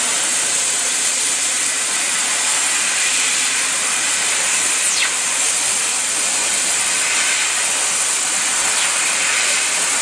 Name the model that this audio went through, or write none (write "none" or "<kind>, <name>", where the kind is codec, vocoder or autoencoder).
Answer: vocoder, BigVGAN v2